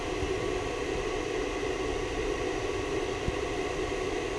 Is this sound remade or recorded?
recorded